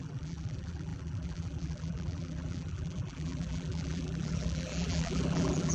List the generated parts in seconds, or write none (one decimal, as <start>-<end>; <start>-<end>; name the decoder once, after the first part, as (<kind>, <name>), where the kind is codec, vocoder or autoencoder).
0.0-5.7 (vocoder, BigVGAN v2)